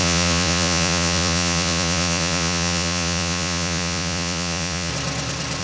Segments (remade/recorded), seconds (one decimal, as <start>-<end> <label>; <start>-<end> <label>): 0.0-4.9 remade; 4.9-5.6 recorded